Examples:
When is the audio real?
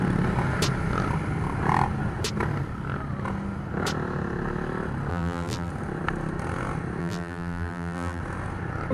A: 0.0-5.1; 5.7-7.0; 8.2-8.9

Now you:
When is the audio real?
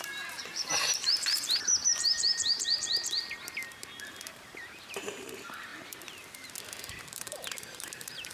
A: 5.7-6.8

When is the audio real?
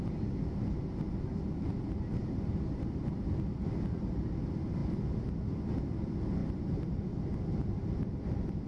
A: 0.0-2.2; 3.2-6.4; 7.2-8.7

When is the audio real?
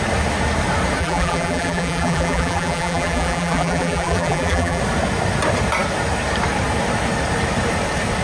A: 0.0-1.0; 4.8-8.2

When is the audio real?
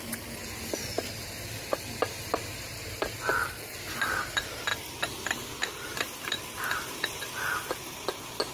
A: 0.0-5.9; 7.7-8.5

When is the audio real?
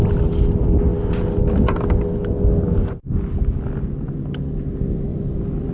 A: 0.0-5.1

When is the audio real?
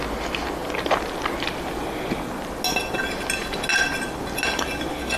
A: 0.0-5.2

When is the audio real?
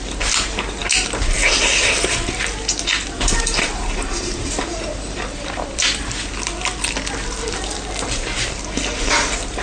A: 0.0-3.0; 6.0-9.6